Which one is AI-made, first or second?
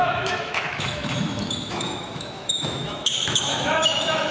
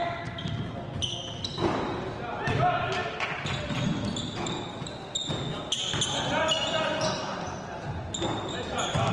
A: first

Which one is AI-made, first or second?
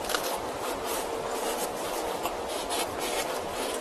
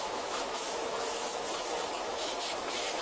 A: second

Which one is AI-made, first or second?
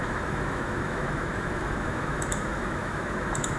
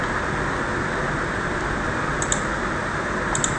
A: first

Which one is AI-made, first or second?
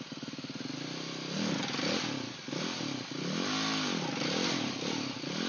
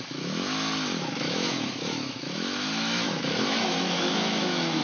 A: second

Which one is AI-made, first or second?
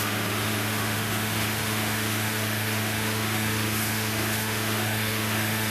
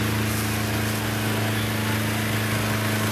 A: first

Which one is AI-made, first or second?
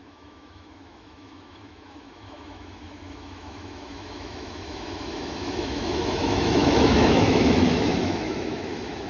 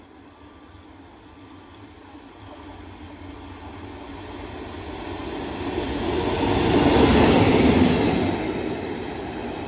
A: first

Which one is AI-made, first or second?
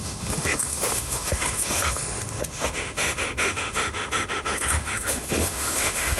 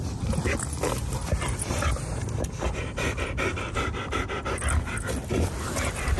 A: first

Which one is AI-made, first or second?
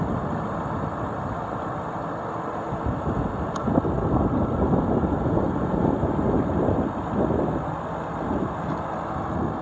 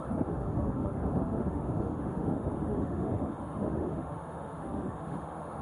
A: second